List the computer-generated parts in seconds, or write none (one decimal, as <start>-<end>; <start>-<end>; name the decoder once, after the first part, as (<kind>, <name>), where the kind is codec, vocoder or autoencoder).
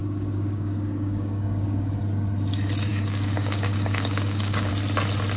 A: 0.0-2.0 (codec, DAC); 2.9-4.7